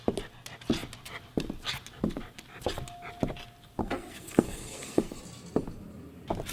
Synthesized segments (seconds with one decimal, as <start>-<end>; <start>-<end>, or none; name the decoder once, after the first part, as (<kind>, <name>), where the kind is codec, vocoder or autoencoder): 3.8-5.2 (codec, SNAC)